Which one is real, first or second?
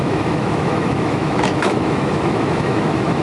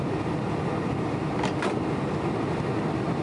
second